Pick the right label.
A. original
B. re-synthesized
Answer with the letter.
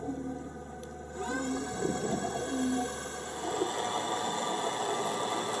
A